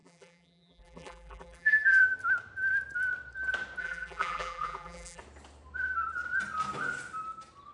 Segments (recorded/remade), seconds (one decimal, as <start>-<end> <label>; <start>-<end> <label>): 0.0-2.0 remade; 2.0-3.8 recorded; 3.8-5.2 remade; 5.2-7.7 recorded